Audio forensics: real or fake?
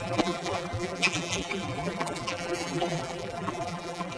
fake